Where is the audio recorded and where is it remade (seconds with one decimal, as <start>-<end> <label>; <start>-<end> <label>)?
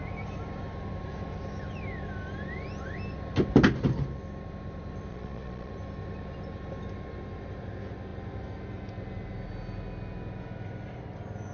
0.0-5.1 recorded; 5.1-5.7 remade; 5.7-11.5 recorded